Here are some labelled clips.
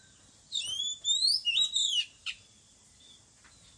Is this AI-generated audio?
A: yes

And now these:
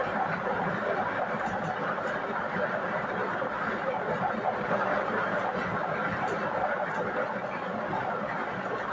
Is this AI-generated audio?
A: no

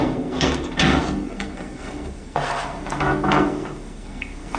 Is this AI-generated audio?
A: yes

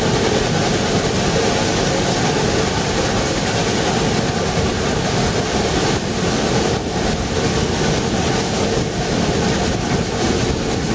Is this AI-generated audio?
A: no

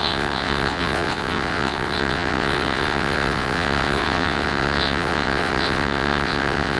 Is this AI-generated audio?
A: yes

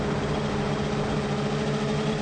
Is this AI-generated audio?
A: no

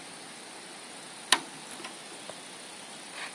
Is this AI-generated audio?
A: no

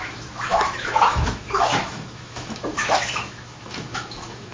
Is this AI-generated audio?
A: yes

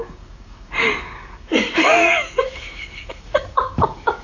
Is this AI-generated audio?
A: yes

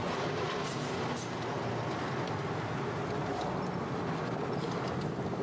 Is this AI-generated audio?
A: no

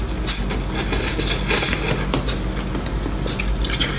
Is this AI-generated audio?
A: no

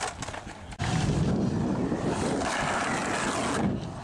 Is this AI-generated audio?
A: no